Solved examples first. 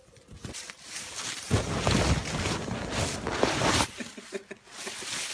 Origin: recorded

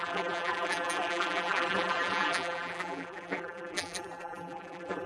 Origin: remade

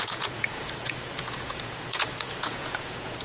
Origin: remade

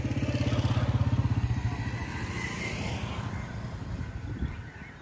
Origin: recorded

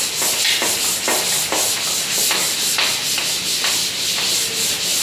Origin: recorded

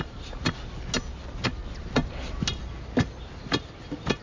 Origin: recorded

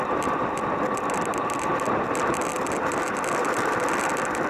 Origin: recorded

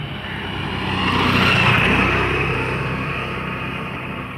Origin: recorded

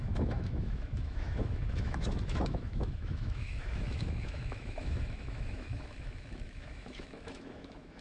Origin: remade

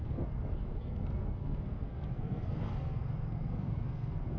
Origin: remade